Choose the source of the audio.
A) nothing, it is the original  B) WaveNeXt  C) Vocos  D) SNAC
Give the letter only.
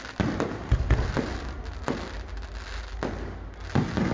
A